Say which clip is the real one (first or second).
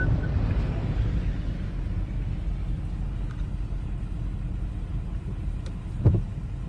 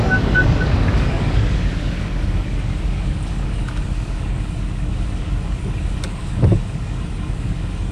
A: first